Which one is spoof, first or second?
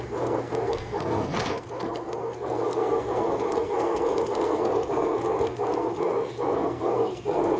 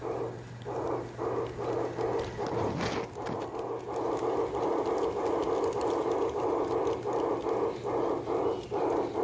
first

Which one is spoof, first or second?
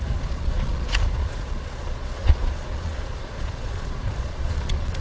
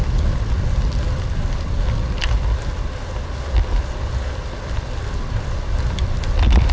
first